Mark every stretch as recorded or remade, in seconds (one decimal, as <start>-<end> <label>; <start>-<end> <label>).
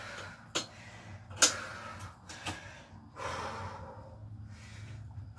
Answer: 0.0-5.4 recorded